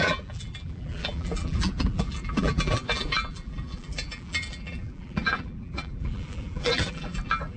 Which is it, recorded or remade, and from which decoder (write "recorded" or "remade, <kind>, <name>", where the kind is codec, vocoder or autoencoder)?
remade, vocoder, BigVGAN v2